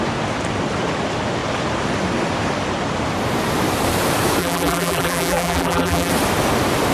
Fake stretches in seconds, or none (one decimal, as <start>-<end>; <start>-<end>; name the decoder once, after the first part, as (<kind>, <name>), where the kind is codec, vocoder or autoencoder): 4.4-6.1 (vocoder, BigVGAN v2)